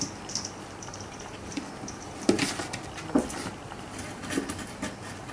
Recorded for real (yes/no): no